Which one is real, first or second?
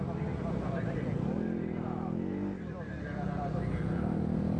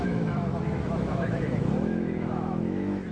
first